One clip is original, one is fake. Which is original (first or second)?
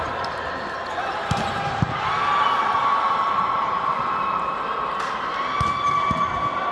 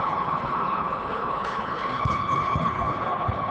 first